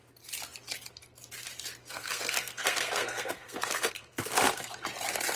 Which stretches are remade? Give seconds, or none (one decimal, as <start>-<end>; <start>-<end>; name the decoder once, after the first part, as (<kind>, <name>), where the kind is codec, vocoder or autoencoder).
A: 1.8-4.7 (codec, SNAC)